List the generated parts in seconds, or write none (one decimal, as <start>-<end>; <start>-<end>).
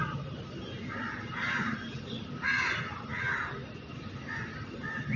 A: none